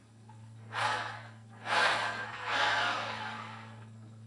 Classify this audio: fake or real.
fake